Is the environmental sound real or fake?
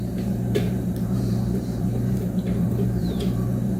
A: fake